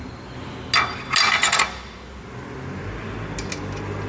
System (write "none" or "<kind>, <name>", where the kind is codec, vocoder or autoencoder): none